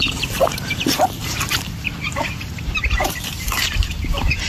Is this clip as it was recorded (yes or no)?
no